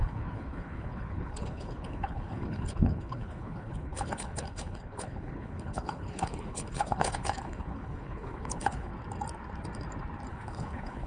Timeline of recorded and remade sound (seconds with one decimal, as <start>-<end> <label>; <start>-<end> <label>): 0.0-8.9 remade; 8.9-10.3 recorded; 10.3-11.1 remade